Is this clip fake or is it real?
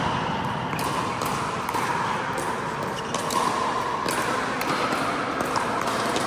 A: real